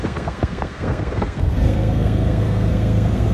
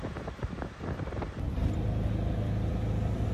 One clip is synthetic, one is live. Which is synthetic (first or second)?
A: first